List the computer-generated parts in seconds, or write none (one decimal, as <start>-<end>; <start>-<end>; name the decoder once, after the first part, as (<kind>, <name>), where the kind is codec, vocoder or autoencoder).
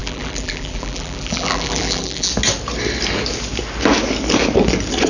0.0-2.3 (vocoder, BigVGAN v2)